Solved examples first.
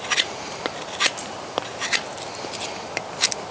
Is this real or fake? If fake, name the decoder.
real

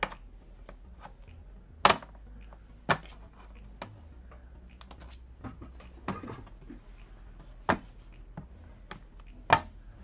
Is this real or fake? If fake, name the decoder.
real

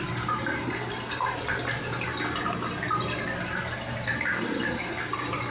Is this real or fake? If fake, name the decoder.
real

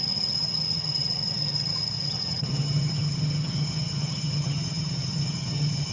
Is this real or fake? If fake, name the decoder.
fake, vocoder, HiFi-GAN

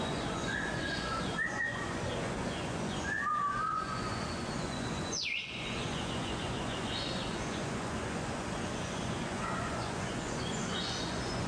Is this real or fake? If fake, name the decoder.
fake, vocoder, Vocos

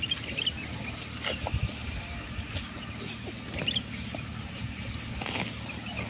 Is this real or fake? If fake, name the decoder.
real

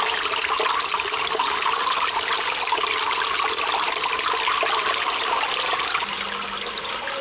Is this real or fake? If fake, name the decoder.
real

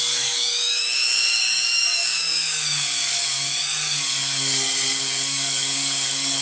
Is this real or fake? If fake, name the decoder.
fake, codec, DAC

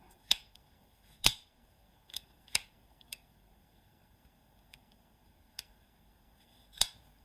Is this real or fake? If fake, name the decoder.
fake, codec, SNAC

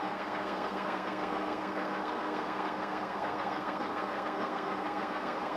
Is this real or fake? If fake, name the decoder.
fake, codec, SNAC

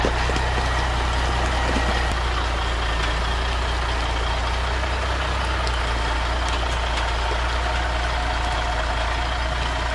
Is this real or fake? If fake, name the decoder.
real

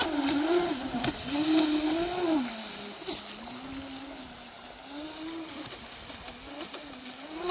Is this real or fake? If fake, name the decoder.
real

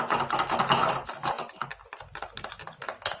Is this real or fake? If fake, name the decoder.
real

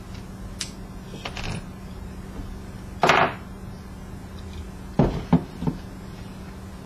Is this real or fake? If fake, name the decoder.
real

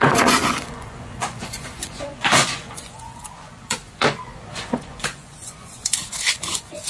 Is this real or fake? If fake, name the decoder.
fake, vocoder, Vocos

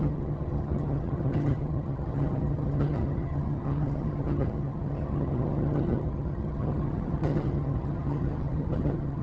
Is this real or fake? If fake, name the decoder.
fake, vocoder, HiFi-GAN